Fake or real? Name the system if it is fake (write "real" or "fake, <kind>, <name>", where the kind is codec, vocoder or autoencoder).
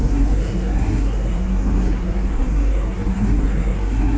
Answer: fake, codec, SNAC